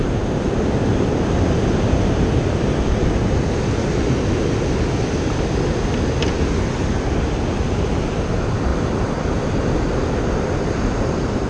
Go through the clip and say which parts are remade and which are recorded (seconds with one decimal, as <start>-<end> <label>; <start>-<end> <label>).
0.0-0.9 recorded; 0.9-3.3 remade; 3.3-8.7 recorded; 8.7-11.5 remade